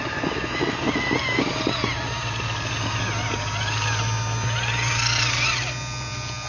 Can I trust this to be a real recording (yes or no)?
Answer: yes